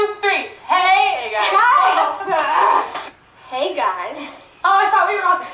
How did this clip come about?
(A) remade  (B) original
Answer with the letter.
B